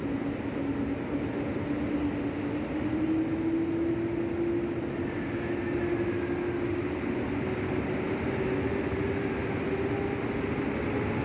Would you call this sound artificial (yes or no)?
no